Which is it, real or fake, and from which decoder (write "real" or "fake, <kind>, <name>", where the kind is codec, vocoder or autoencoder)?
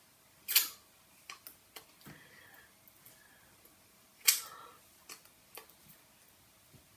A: real